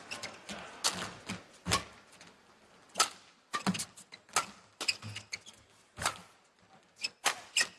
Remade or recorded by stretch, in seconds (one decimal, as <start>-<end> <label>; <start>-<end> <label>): 0.0-7.8 recorded